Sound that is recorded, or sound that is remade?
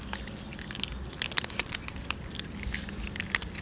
recorded